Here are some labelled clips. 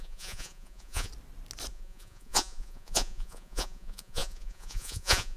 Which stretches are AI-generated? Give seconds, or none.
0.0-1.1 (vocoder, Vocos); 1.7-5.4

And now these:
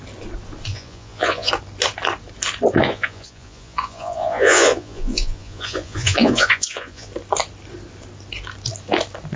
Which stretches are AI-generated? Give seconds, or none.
0.7-1.5 (vocoder, Vocos); 2.8-7.1